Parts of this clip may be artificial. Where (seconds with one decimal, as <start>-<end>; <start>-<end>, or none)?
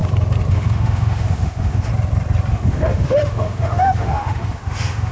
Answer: 0.5-1.9; 2.5-5.1